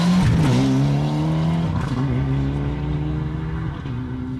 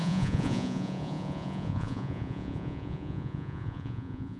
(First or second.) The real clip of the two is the first